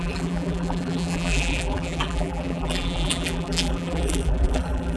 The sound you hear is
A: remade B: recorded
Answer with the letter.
A